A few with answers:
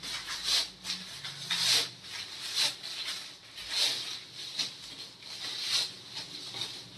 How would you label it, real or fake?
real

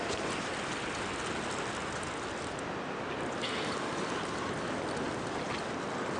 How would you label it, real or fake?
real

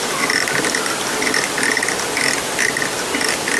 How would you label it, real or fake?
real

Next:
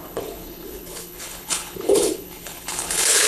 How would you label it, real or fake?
fake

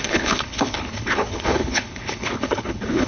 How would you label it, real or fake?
fake